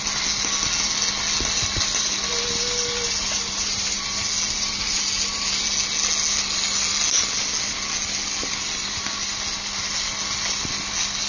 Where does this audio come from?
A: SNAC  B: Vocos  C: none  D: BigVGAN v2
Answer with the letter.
C